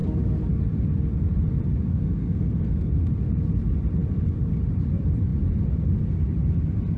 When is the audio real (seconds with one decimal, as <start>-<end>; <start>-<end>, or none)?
0.0-1.9; 3.1-7.0